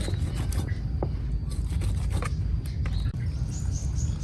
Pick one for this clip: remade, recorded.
recorded